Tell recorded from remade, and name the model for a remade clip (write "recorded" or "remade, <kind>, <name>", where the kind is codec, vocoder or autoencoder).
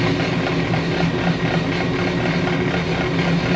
recorded